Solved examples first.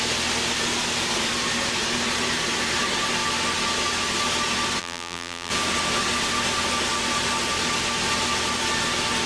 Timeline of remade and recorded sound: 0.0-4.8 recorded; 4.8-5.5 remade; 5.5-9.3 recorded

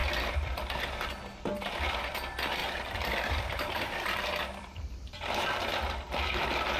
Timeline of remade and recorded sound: 0.0-2.6 recorded; 2.6-5.8 remade; 5.8-6.8 recorded

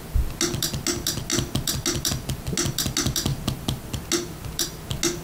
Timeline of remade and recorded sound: 0.0-3.3 recorded; 3.3-4.0 remade; 4.0-5.2 recorded